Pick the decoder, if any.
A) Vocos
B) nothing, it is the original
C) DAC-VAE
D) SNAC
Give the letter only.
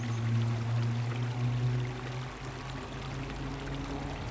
B